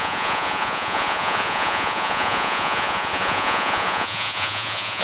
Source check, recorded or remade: remade